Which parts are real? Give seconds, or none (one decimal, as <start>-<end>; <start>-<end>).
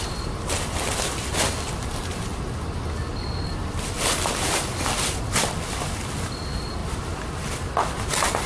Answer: 0.0-8.5